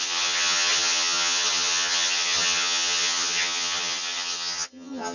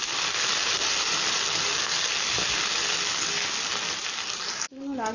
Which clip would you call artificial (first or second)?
first